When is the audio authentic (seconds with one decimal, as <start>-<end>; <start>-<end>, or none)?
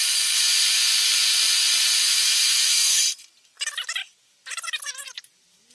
0.0-2.0; 3.0-5.7